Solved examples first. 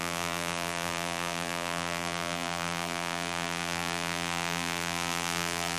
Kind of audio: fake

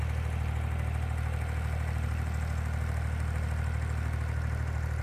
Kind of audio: real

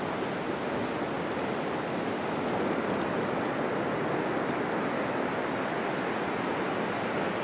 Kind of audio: real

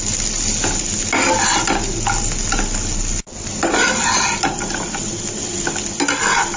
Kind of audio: real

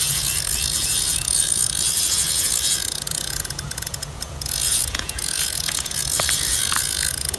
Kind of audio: fake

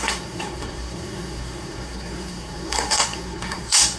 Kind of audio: fake